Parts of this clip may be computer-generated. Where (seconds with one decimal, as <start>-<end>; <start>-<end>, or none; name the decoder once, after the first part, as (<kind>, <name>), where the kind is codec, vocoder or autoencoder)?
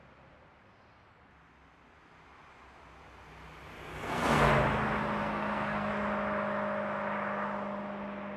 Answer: 3.9-4.5 (codec, SNAC); 5.2-5.9